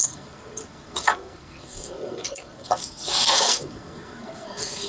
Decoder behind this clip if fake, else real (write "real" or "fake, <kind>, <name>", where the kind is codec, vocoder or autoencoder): fake, codec, SNAC